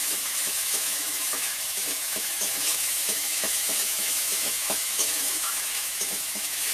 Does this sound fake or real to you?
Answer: fake